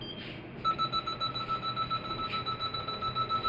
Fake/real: real